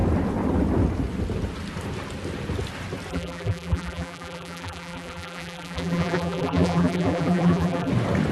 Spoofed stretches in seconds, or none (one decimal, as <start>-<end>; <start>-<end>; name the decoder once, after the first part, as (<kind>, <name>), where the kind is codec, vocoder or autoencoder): 3.1-7.9 (vocoder, BigVGAN v2)